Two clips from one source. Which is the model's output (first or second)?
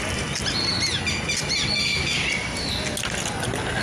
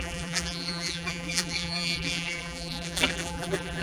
second